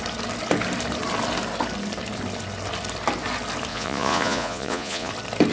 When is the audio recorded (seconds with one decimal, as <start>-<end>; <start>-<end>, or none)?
0.0-3.7; 5.1-5.5